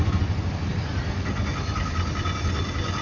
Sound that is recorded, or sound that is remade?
recorded